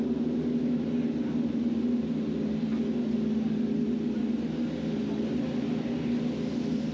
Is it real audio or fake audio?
real